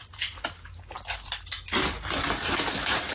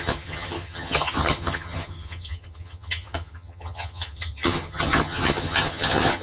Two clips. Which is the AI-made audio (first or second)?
second